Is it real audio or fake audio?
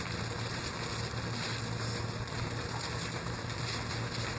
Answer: real